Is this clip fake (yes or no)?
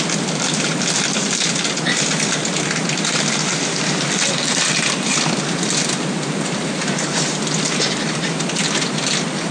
no